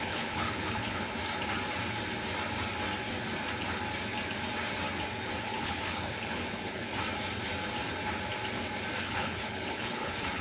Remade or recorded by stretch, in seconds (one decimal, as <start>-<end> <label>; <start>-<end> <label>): 0.0-1.1 remade; 1.1-5.4 recorded; 5.4-6.9 remade; 6.9-9.0 recorded; 9.0-10.4 remade